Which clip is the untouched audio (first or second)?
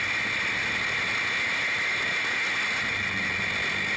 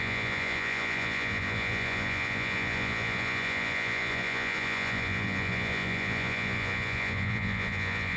first